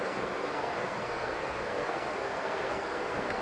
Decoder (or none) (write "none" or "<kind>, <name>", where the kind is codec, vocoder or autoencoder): codec, SNAC